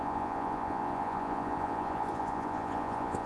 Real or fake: fake